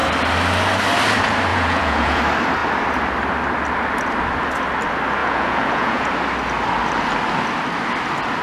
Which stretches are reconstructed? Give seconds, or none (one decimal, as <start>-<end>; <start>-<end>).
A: 1.5-2.2; 5.2-6.1